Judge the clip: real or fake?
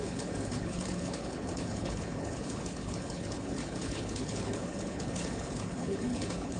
fake